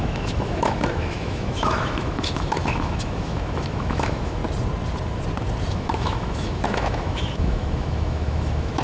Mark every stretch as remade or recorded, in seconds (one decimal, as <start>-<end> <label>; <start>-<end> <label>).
0.0-4.4 remade; 4.4-5.7 recorded; 5.7-8.8 remade